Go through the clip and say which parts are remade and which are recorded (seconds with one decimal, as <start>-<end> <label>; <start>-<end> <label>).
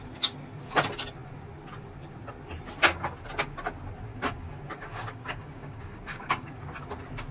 0.0-4.1 recorded; 4.1-6.6 remade; 6.6-7.3 recorded